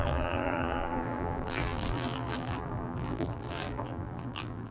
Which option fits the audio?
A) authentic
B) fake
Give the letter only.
B